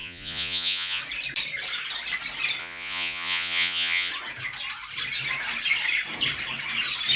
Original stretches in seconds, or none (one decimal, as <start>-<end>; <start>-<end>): 1.0-2.6; 4.1-7.2